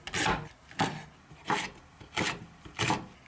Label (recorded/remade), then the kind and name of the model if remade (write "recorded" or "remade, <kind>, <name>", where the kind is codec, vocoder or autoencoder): recorded